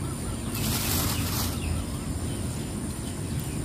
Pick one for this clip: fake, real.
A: real